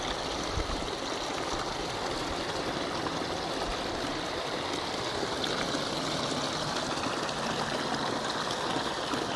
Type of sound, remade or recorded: recorded